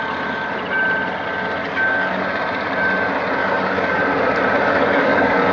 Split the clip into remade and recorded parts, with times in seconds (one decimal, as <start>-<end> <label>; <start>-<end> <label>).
0.0-1.6 recorded; 1.6-2.2 remade; 2.2-3.4 recorded; 3.4-4.0 remade; 4.0-4.7 recorded; 4.7-5.5 remade